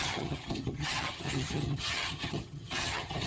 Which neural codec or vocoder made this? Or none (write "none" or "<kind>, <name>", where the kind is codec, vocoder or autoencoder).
vocoder, HiFi-GAN